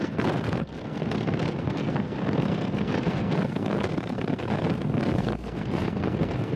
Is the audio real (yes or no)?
no